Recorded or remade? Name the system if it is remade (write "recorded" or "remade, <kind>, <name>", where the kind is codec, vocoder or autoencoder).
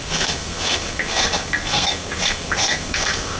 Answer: remade, codec, SNAC